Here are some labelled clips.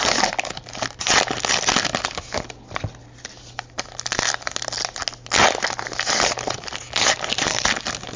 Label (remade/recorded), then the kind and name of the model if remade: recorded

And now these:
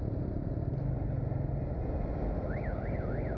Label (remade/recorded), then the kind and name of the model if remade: recorded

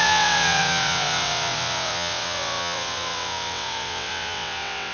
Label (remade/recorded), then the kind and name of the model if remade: remade, vocoder, WaveNeXt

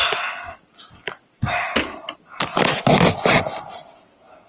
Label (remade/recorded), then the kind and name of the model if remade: recorded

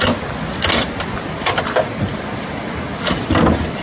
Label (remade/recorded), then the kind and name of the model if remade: recorded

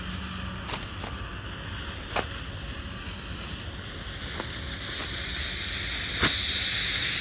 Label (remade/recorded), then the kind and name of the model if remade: recorded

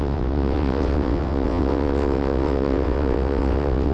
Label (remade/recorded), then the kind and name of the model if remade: remade, vocoder, WaveNeXt